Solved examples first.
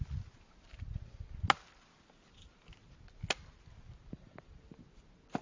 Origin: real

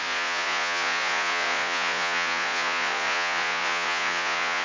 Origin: fake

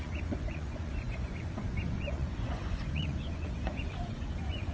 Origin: fake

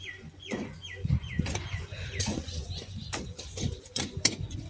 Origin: fake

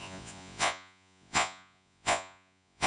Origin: fake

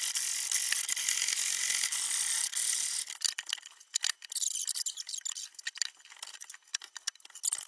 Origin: real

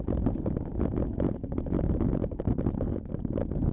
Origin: real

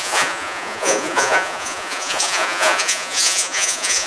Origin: fake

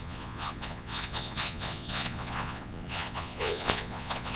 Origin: fake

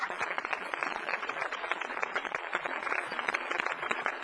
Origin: fake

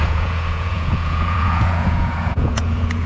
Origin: fake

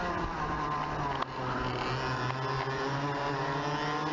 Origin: real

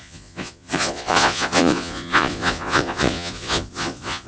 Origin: fake